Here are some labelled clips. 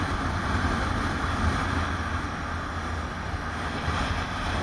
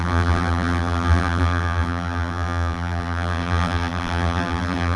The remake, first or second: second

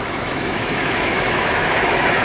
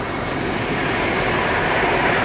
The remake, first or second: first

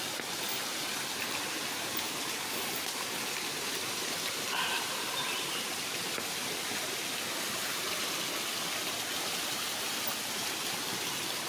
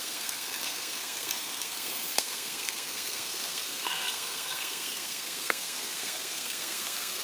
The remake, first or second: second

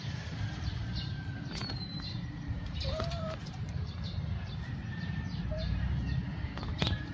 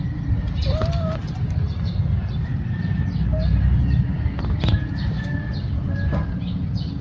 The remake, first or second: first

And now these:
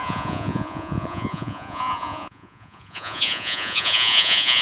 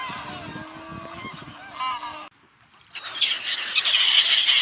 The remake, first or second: first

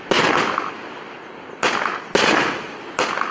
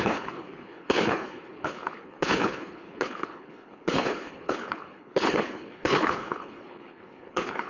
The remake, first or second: second